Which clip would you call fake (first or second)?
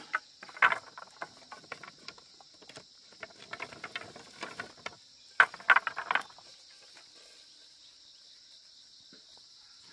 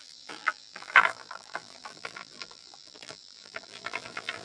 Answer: second